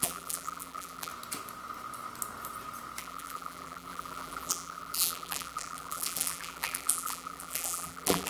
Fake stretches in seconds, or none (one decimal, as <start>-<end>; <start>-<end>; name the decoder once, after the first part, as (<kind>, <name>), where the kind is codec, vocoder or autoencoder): 0.0-1.1 (vocoder, BigVGAN v2); 3.0-8.3